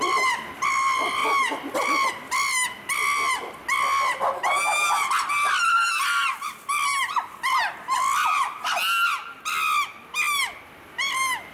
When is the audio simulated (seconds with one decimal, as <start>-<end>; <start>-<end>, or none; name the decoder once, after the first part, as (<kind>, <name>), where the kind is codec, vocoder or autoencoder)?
none